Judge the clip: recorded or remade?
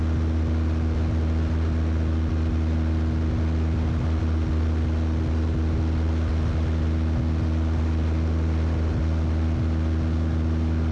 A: recorded